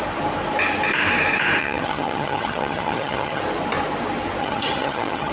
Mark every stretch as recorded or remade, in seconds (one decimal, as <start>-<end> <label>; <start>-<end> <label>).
0.0-1.6 recorded; 1.6-3.4 remade; 3.4-4.4 recorded; 4.4-5.3 remade